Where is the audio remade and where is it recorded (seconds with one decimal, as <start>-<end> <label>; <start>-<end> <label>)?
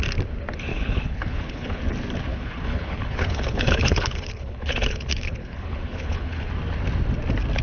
0.0-0.7 recorded; 0.7-1.8 remade; 1.8-2.3 recorded; 2.3-6.5 remade; 6.5-7.6 recorded